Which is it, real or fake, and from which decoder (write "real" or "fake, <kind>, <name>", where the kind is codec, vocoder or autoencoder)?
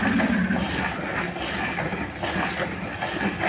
real